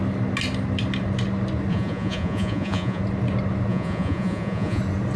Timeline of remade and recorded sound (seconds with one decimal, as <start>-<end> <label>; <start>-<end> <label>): 0.0-1.7 recorded; 1.7-3.0 remade; 3.0-3.7 recorded; 3.7-4.8 remade; 4.8-5.2 recorded